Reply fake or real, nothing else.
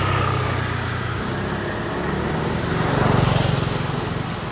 real